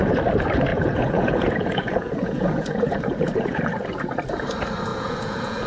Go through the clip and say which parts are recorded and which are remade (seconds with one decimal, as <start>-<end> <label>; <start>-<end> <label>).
0.0-0.7 recorded; 0.7-3.6 remade; 3.6-4.9 recorded; 4.9-5.7 remade